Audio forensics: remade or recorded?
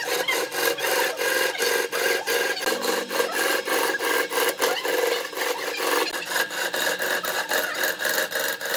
recorded